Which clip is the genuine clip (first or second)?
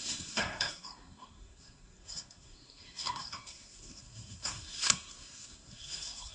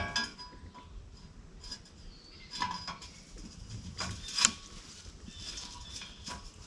second